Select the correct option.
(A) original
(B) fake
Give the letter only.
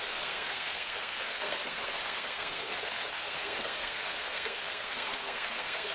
B